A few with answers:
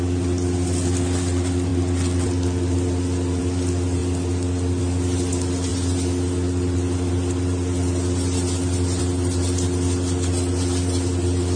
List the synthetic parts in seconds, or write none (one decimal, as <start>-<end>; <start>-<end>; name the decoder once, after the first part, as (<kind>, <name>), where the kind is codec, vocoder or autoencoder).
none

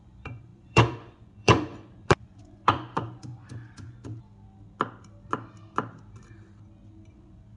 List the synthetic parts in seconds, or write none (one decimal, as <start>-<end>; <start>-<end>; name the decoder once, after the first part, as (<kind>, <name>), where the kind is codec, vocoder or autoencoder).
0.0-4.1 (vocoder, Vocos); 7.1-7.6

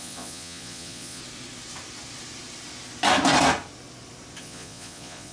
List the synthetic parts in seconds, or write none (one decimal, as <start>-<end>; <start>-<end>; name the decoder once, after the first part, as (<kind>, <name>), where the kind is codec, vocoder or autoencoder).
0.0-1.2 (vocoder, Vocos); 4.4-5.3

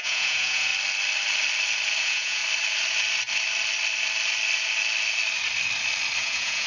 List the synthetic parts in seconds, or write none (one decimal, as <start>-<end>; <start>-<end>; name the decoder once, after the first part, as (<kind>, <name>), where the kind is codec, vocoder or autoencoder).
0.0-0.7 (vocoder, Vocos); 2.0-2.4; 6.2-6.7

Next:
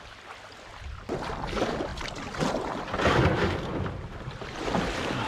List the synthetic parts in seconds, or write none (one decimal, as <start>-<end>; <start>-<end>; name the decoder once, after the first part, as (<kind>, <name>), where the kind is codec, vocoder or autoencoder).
none

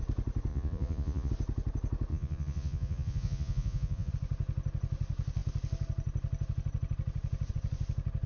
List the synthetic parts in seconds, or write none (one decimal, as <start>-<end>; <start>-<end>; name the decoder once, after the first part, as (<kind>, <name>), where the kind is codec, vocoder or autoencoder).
0.5-1.3 (vocoder, Vocos); 2.1-4.1